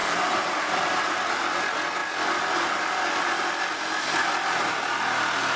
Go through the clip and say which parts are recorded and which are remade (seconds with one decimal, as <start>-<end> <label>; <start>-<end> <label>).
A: 0.0-0.5 remade; 0.5-5.6 recorded